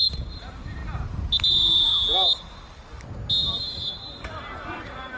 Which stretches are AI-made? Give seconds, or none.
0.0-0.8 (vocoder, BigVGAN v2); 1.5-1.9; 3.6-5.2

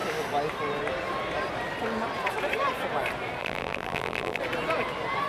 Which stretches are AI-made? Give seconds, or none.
3.4-4.4 (vocoder, BigVGAN v2)

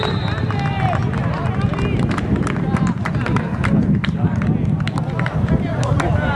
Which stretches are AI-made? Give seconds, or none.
none

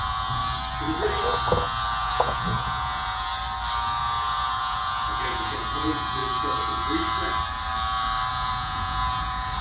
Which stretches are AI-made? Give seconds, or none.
0.0-0.4 (vocoder, Vocos); 2.0-3.3; 4.0-6.2; 8.3-9.6